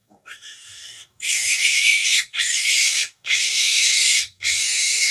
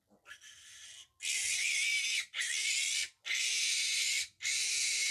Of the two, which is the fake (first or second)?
first